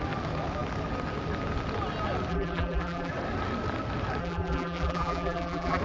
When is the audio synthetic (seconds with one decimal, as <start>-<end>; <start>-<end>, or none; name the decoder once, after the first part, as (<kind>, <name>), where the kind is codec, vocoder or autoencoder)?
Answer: 2.3-3.1 (vocoder, BigVGAN v2); 4.2-5.8